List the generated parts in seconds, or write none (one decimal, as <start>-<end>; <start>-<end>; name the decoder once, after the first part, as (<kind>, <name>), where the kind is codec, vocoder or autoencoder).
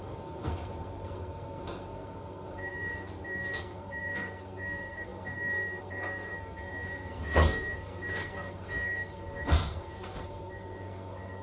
0.0-11.4 (codec, SNAC)